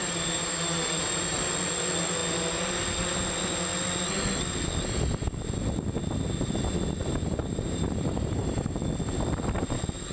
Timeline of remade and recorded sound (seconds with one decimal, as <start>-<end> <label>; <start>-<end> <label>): 0.0-1.5 remade; 1.5-7.0 recorded; 7.0-8.7 remade; 8.7-10.1 recorded